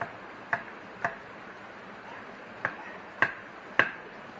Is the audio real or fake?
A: real